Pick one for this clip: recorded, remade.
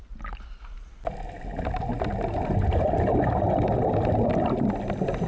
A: recorded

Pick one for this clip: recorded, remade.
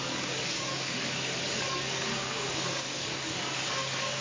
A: remade